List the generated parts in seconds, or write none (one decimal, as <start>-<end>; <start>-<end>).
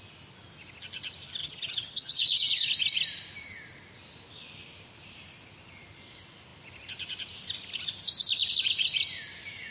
1.4-2.7